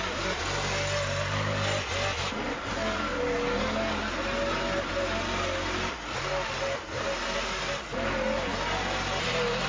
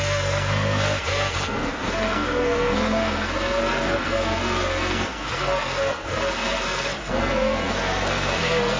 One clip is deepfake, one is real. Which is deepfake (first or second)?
second